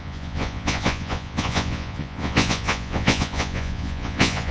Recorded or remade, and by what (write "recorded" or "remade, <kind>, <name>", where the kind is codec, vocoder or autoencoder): remade, vocoder, Vocos